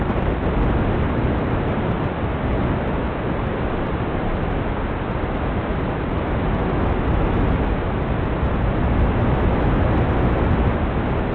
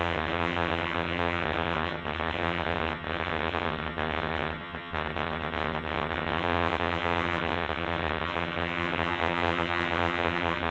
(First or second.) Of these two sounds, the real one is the first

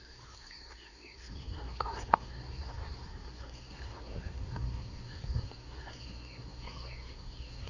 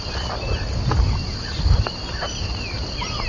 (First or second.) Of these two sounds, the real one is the second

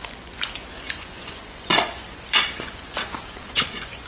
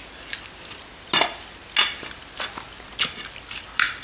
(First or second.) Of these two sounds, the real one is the second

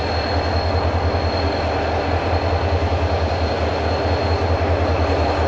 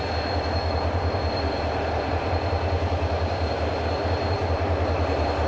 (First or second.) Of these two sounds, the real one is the first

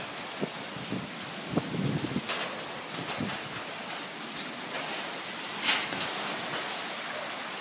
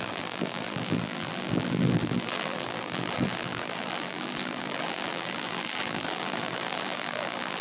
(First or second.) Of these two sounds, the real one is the first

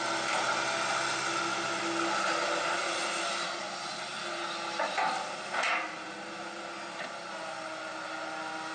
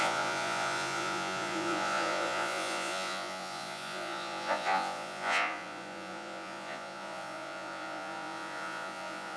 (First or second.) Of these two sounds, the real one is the first